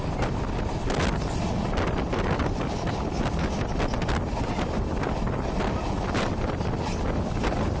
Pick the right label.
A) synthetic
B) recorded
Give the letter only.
B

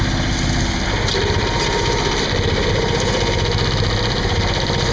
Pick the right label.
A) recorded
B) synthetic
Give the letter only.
A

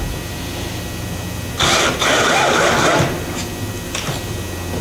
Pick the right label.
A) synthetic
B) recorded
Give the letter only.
B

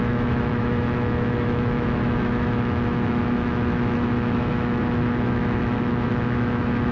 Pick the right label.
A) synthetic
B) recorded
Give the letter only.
A